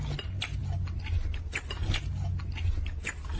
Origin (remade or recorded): recorded